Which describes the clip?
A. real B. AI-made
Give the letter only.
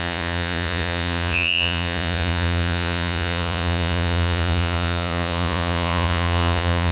B